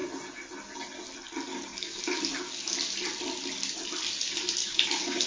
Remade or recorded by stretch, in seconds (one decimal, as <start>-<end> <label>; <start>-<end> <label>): 0.0-1.5 recorded; 1.5-2.7 remade; 2.7-4.6 recorded; 4.6-5.3 remade